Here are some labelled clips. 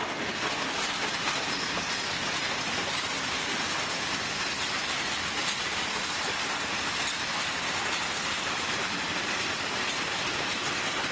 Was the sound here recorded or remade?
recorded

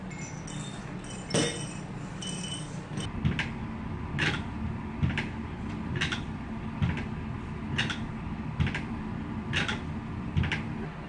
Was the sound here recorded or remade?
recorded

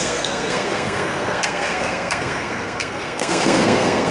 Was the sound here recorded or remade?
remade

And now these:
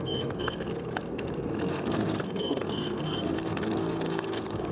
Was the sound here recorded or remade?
remade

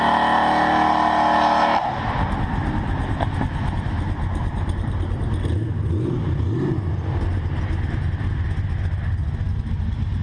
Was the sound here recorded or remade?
recorded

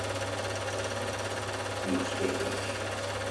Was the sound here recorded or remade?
recorded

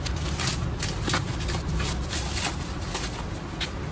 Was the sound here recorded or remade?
recorded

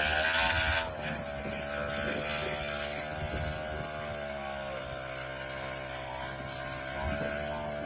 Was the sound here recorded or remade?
recorded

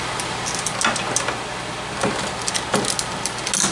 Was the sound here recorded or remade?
recorded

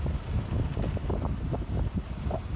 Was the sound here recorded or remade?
recorded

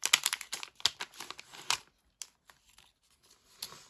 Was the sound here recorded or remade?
recorded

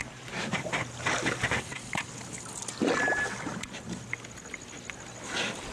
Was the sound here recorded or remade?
recorded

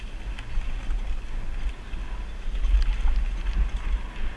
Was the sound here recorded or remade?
recorded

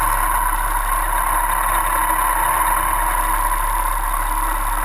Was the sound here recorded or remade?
recorded